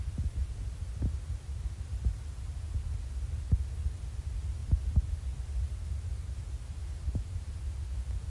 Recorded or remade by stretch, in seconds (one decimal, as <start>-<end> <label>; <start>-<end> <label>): 0.0-6.8 recorded; 6.8-7.6 remade; 7.6-8.3 recorded